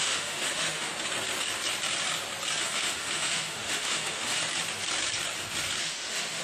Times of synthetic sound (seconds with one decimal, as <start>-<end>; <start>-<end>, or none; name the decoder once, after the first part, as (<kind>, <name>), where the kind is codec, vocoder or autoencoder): 0.0-0.9 (autoencoder, DAC-VAE); 2.6-4.4; 5.8-6.4